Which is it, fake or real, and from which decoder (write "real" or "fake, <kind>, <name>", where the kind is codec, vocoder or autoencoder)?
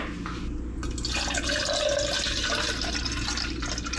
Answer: real